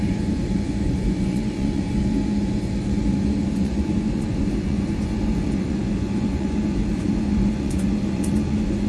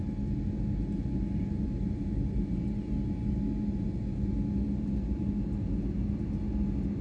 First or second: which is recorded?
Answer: second